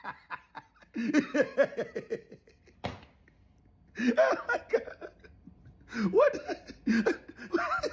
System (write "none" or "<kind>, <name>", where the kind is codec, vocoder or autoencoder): none